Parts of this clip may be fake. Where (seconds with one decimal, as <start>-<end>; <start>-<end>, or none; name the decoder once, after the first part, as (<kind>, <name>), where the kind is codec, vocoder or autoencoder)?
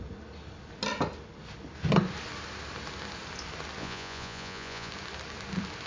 3.8-4.9 (vocoder, Vocos)